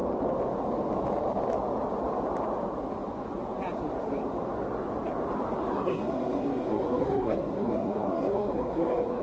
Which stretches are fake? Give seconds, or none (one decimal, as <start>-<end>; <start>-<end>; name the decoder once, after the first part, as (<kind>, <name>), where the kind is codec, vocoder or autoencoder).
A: 5.7-9.2 (codec, SNAC)